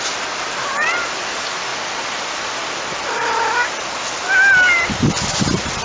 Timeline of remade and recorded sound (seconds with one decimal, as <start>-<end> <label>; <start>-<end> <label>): 0.0-1.7 recorded; 1.7-3.7 remade; 3.7-5.8 recorded